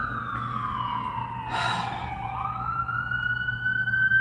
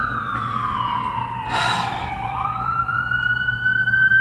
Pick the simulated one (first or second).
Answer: second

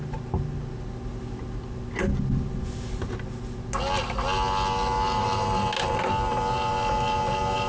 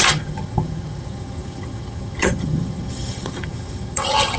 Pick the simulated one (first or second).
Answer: second